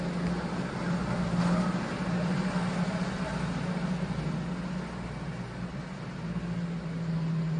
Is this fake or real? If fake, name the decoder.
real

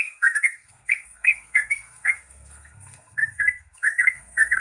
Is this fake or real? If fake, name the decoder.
fake, codec, SNAC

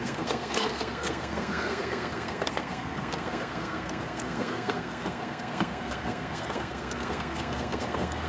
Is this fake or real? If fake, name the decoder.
fake, codec, SNAC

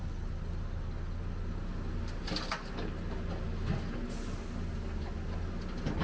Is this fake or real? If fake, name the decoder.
real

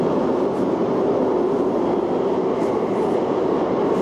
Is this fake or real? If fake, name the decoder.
real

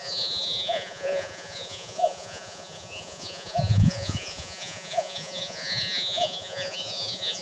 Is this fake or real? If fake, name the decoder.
fake, vocoder, Vocos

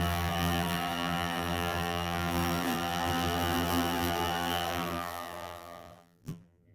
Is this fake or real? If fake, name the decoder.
fake, vocoder, BigVGAN v2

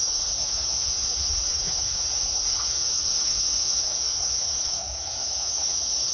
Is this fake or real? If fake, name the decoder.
fake, autoencoder, DAC-VAE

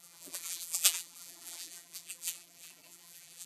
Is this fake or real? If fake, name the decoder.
fake, vocoder, BigVGAN v2